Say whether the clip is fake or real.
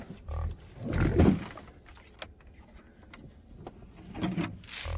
real